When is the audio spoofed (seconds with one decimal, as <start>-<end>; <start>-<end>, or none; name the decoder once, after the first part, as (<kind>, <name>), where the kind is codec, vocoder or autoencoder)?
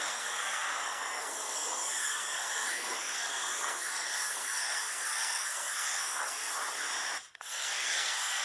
0.0-6.5 (codec, SNAC); 7.3-8.4